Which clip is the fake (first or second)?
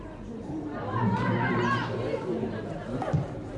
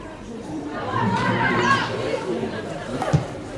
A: second